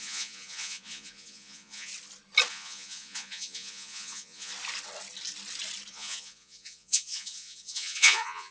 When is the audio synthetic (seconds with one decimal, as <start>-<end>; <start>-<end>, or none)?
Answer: 0.0-1.9; 2.5-4.5; 5.9-8.5